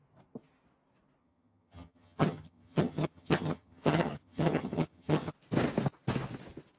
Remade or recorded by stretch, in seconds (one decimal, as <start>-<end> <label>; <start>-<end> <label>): 0.0-1.2 recorded; 1.2-5.3 remade; 5.3-6.8 recorded